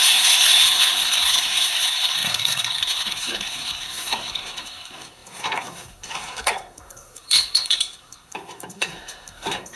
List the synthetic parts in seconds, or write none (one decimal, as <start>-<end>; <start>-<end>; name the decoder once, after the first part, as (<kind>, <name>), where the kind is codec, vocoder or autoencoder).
0.0-9.8 (codec, SNAC)